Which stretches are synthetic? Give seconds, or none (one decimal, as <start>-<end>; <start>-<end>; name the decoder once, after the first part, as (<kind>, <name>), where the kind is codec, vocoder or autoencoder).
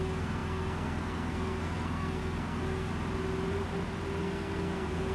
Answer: 0.0-2.9 (codec, SNAC); 4.2-5.1